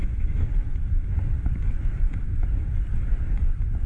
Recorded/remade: recorded